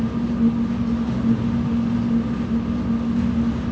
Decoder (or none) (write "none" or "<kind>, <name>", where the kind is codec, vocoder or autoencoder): none